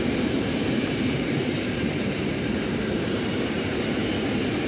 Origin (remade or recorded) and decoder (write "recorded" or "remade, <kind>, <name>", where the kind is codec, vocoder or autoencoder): remade, vocoder, BigVGAN v2